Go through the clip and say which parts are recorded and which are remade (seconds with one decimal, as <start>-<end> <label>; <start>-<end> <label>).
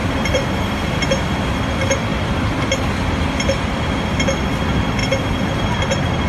0.0-0.6 remade; 0.6-2.1 recorded; 2.1-2.8 remade; 2.8-6.3 recorded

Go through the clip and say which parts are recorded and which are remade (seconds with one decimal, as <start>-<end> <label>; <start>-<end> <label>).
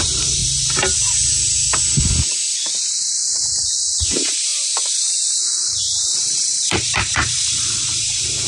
0.0-0.4 remade; 0.4-2.7 recorded; 2.7-8.5 remade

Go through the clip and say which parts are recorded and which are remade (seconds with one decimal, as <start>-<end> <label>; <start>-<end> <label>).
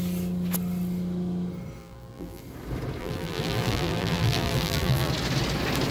0.0-1.8 recorded; 1.8-2.4 remade; 2.4-3.0 recorded; 3.0-5.1 remade; 5.1-5.9 recorded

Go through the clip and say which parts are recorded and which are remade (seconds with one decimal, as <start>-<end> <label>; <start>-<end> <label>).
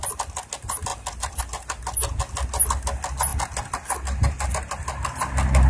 0.0-0.5 remade; 0.5-5.7 recorded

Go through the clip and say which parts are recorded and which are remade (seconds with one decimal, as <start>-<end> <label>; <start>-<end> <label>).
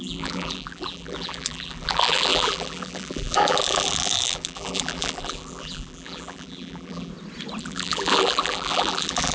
0.0-7.1 remade; 7.1-7.6 recorded; 7.6-9.3 remade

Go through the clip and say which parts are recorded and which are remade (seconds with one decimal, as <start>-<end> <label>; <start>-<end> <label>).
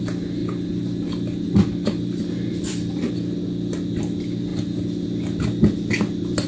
0.0-0.4 recorded; 0.4-3.1 remade; 3.1-6.5 recorded